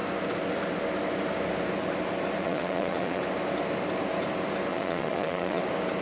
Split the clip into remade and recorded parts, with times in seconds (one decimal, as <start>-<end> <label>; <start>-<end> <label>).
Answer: 0.0-2.4 recorded; 2.4-3.2 remade; 3.2-4.7 recorded; 4.7-5.6 remade; 5.6-6.0 recorded